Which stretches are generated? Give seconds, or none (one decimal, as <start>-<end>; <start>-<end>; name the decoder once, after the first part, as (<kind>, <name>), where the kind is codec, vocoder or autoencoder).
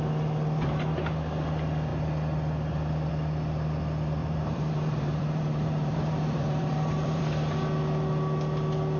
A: 4.2-7.2 (vocoder, BigVGAN v2)